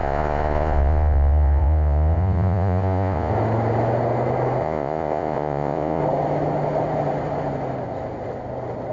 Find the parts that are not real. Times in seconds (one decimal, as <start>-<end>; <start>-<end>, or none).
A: 0.0-3.3; 4.6-6.0